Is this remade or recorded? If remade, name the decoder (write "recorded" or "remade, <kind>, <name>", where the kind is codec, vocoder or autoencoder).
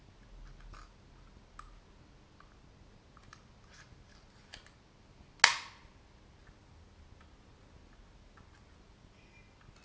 recorded